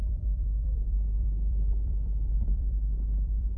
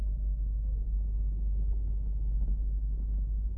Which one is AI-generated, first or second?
first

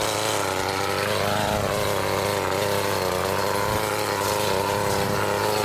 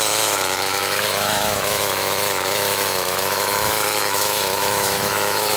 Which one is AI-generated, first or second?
second